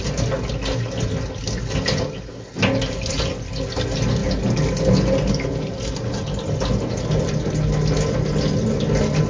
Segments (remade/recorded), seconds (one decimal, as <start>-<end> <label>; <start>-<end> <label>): 0.0-9.3 recorded